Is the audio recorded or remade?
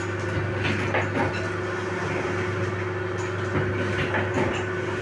recorded